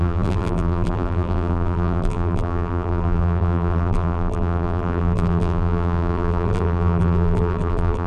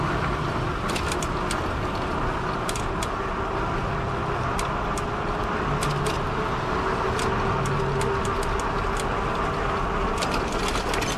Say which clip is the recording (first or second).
second